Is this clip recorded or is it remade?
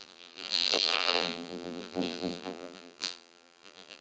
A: remade